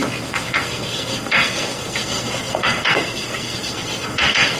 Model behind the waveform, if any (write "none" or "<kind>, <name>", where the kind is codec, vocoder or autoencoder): codec, SNAC